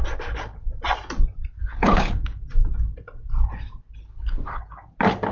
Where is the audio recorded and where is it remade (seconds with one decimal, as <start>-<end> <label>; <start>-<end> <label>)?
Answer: 0.0-1.6 recorded; 1.6-2.1 remade; 2.1-4.0 recorded; 4.0-4.6 remade; 4.6-5.3 recorded